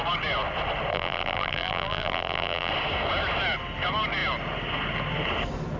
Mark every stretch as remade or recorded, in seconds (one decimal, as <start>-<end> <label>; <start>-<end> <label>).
0.0-0.9 recorded; 0.9-2.7 remade; 2.7-5.8 recorded